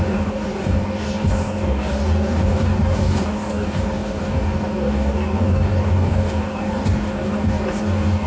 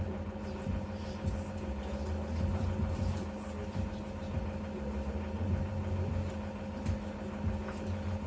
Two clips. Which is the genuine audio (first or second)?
second